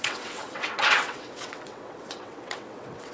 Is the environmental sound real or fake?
fake